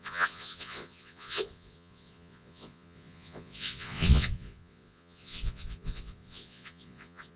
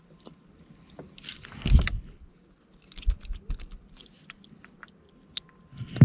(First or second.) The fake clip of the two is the first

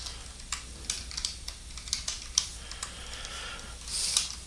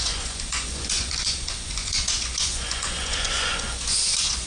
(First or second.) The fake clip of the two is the second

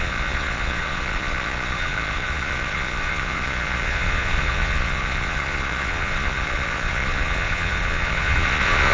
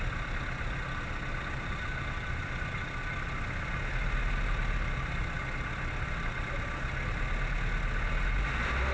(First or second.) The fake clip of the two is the first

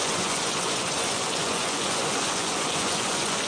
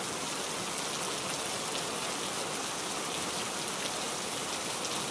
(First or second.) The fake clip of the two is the first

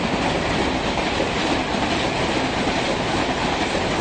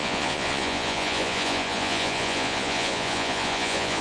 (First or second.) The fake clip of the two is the second